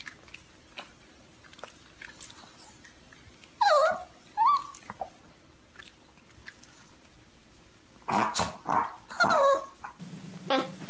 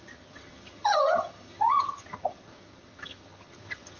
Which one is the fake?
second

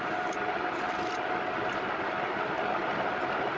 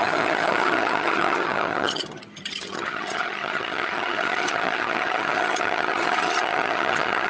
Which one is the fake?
second